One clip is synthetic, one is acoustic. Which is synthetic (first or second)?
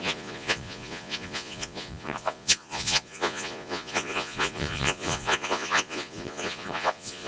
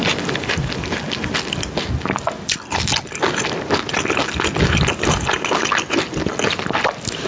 first